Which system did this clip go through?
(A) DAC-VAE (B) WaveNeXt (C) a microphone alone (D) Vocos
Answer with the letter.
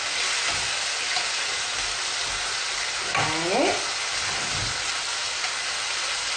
C